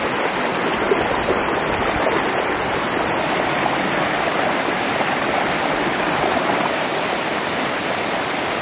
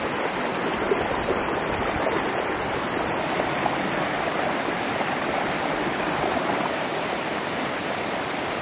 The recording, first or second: first